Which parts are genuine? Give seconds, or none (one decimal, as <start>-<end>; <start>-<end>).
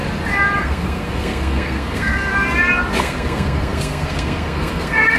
0.0-0.6; 2.3-3.0